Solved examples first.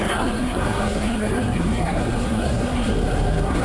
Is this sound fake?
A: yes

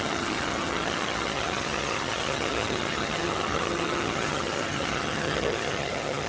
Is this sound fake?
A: yes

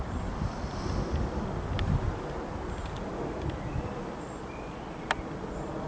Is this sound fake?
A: no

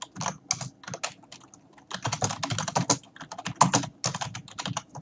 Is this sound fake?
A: no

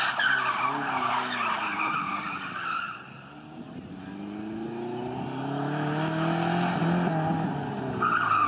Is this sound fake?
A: no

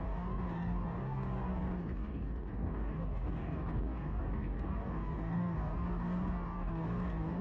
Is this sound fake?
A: yes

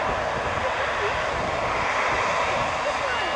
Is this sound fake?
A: no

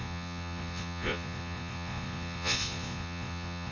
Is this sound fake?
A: yes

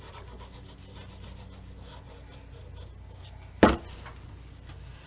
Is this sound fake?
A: no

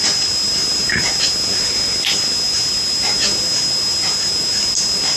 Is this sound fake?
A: no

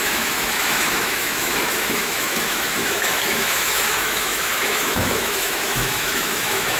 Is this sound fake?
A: yes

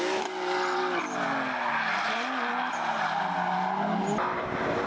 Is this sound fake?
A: no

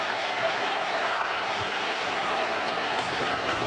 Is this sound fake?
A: yes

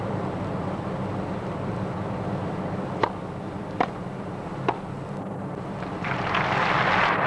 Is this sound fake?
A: yes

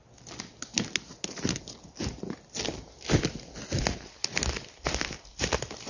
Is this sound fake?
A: no